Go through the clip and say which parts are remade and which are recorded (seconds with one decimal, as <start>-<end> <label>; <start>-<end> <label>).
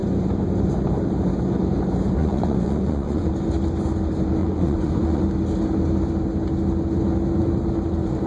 0.0-2.2 recorded; 2.2-3.3 remade; 3.3-4.4 recorded; 4.4-5.2 remade; 5.2-8.3 recorded